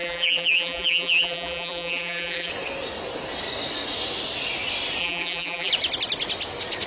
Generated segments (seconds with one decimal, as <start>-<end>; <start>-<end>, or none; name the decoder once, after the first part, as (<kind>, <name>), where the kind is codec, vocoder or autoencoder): 0.0-2.5 (vocoder, BigVGAN v2); 5.0-5.7